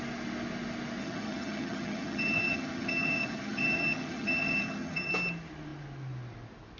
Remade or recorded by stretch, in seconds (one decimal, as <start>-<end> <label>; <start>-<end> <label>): 0.0-1.0 recorded; 1.0-5.1 remade; 5.1-6.8 recorded